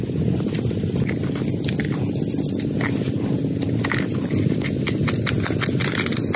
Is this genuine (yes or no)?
yes